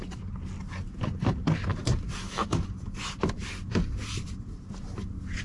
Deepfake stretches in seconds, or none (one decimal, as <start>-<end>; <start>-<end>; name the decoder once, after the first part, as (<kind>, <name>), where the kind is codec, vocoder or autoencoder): 1.7-3.0 (vocoder, BigVGAN v2); 3.7-4.4